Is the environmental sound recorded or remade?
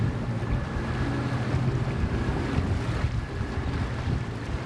recorded